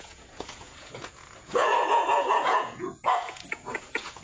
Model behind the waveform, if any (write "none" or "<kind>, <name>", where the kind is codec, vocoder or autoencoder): vocoder, Vocos